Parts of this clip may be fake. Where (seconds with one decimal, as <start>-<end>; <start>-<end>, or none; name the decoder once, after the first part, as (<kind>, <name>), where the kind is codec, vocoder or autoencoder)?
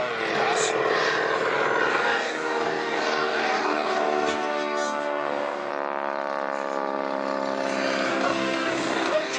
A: 1.9-5.7 (codec, DAC); 8.1-9.4